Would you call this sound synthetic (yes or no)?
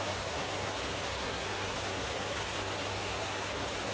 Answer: yes